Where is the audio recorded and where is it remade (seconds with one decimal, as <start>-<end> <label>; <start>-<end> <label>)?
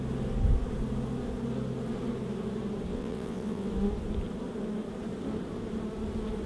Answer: 0.0-2.9 recorded; 2.9-3.7 remade; 3.7-6.5 recorded